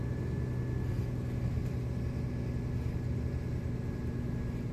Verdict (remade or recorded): recorded